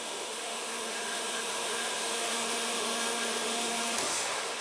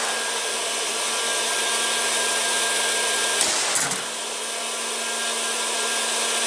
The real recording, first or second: second